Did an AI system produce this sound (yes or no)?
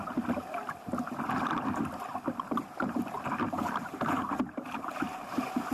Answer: yes